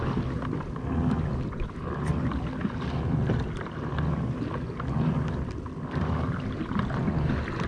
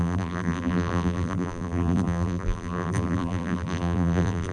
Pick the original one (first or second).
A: first